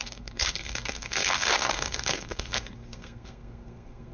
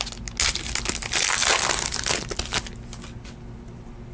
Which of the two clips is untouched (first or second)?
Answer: second